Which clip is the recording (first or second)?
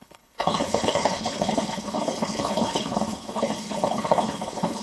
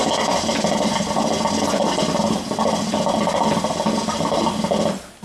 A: second